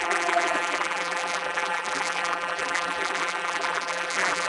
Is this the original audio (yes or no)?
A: no